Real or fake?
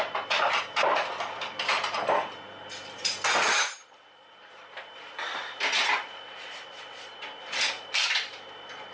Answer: real